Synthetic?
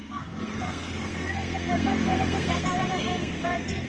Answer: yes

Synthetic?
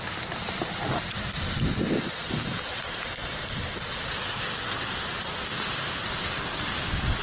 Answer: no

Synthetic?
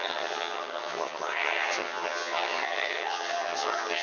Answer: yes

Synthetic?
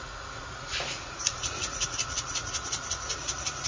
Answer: yes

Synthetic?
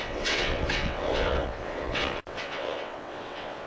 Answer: yes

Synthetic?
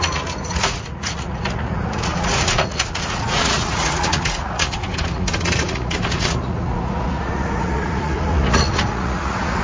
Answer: yes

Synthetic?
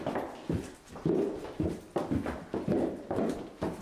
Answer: no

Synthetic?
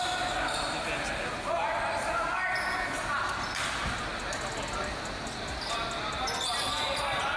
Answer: no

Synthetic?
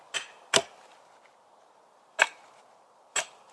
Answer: no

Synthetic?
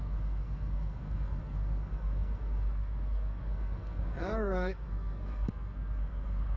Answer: yes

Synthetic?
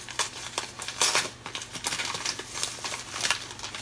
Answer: no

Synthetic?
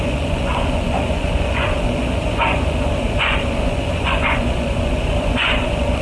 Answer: yes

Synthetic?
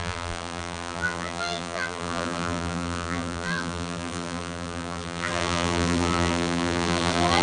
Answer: yes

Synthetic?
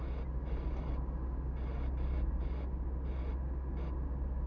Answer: no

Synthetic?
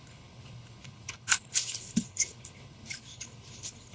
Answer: yes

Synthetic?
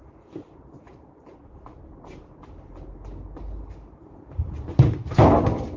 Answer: no